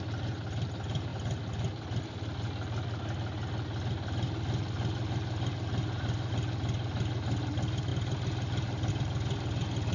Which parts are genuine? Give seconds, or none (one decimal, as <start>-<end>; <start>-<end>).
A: 0.0-9.9